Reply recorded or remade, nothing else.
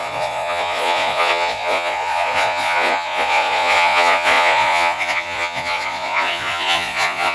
remade